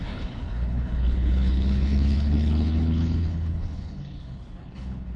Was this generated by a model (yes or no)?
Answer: yes